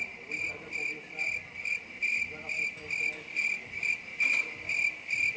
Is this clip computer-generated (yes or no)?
no